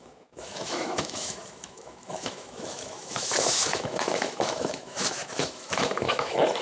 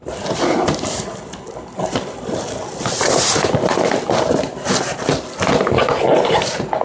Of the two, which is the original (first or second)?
second